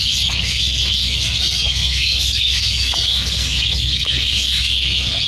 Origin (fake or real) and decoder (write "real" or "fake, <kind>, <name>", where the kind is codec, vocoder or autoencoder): fake, codec, SNAC